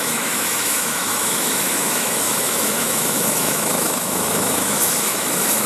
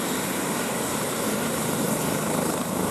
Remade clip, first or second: first